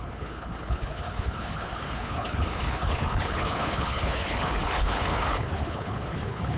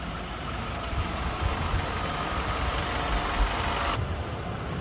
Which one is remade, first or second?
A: first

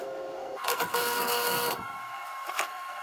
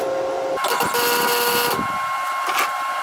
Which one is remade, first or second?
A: first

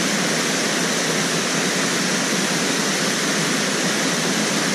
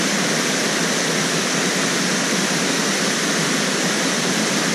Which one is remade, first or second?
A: second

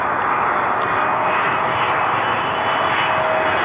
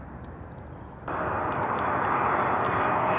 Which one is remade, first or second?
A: second